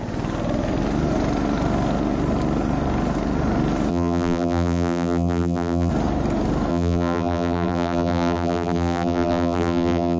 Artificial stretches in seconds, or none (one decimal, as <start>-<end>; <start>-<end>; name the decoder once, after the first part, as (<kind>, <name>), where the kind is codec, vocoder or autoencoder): 3.9-5.9 (vocoder, BigVGAN v2); 6.7-10.2